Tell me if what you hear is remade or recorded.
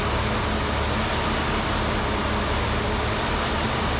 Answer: recorded